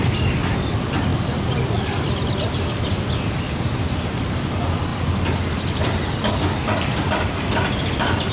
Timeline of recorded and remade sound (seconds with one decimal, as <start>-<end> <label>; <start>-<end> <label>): 0.0-8.3 recorded